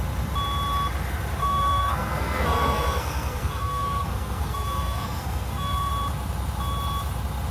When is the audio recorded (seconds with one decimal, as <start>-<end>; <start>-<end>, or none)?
0.0-1.4; 5.9-7.5